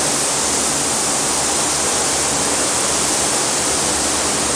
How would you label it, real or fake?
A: real